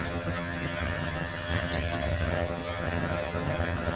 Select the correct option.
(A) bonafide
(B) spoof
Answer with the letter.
B